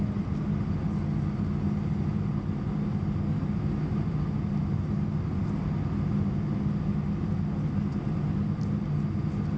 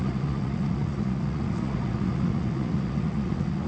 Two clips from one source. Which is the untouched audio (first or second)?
first